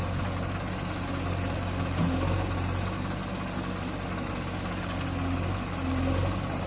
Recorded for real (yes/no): yes